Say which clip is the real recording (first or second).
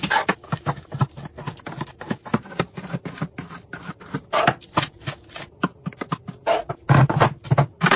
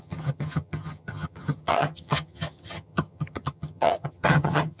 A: first